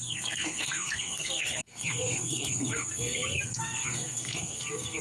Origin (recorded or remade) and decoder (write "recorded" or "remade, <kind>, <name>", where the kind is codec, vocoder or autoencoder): remade, codec, SNAC